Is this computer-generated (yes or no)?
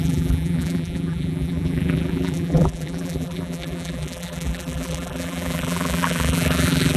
yes